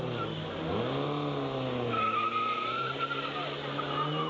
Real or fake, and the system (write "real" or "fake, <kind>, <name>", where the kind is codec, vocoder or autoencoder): real